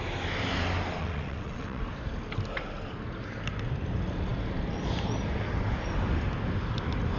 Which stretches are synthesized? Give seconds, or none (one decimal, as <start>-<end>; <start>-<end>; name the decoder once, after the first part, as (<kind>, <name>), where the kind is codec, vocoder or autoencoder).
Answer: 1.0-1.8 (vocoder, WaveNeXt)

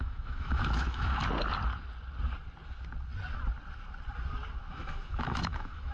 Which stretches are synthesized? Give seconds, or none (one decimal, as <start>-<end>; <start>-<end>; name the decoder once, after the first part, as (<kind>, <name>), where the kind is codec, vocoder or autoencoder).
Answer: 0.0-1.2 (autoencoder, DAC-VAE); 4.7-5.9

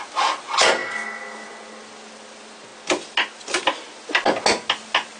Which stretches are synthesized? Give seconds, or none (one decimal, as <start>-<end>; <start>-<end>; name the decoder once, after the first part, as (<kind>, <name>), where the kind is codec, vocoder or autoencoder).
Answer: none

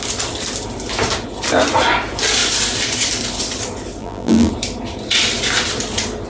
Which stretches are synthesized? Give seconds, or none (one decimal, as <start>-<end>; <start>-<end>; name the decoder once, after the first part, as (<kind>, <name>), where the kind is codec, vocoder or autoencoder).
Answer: 4.0-4.5 (vocoder, BigVGAN v2)